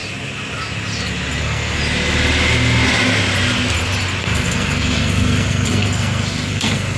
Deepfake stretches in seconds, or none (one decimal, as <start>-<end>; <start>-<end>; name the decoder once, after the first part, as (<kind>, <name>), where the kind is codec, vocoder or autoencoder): 1.4-1.8 (codec, SNAC); 4.2-7.0